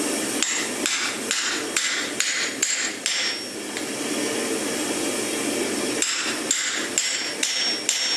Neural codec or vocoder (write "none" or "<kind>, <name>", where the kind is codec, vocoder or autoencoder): none